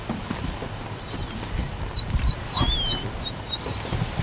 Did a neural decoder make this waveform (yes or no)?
no